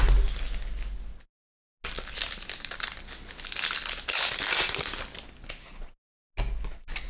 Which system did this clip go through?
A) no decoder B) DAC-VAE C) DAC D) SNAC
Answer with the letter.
A